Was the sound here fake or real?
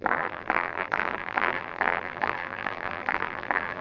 fake